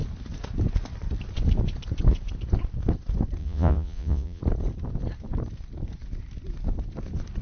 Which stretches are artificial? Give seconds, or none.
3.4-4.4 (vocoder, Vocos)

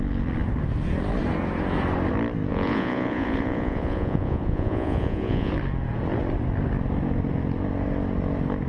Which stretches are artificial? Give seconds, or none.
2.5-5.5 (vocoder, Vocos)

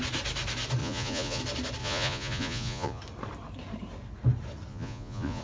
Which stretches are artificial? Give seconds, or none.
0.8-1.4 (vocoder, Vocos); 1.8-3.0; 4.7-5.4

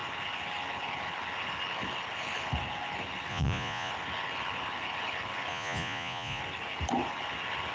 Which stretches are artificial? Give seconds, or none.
3.3-3.9 (vocoder, Vocos); 5.5-6.4